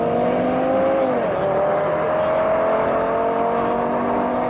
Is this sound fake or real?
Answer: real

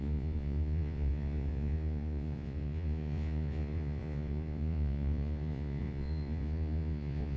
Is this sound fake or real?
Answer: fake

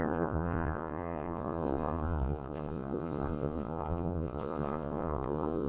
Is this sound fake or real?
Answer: fake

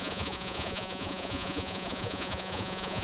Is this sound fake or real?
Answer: fake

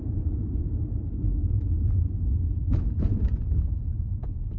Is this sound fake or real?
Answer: fake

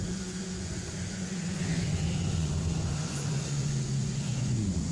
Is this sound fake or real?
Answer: fake